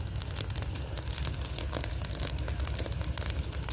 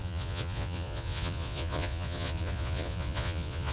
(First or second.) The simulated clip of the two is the second